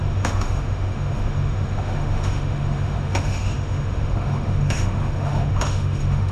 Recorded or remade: remade